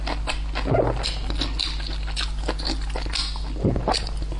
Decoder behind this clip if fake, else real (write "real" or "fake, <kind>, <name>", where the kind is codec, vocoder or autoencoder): real